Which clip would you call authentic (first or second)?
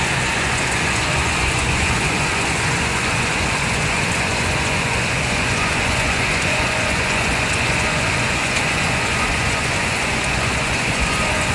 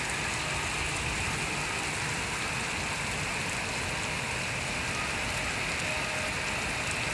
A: second